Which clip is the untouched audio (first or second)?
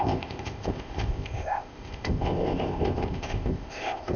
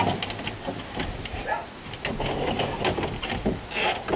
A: second